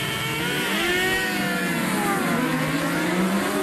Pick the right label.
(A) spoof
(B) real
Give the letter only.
B